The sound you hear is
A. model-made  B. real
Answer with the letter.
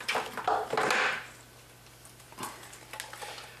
B